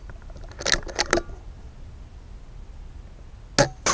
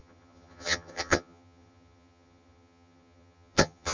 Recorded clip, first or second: first